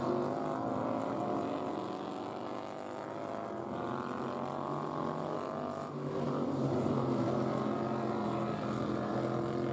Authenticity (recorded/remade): recorded